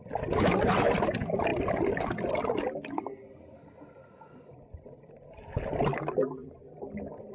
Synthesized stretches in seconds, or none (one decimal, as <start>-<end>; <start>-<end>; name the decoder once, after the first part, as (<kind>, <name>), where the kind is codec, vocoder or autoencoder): none